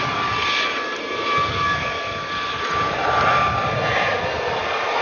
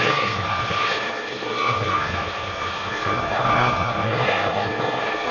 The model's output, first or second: second